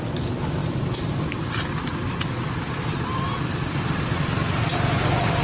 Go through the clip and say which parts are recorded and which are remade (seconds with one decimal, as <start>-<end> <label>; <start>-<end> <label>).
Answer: 0.0-5.4 recorded